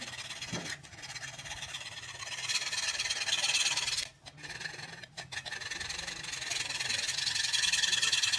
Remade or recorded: recorded